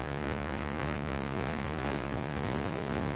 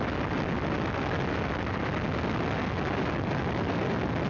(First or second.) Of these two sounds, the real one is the second